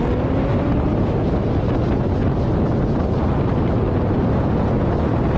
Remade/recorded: recorded